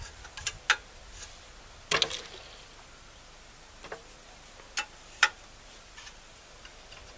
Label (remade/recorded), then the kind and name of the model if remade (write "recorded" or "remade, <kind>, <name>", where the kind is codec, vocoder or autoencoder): recorded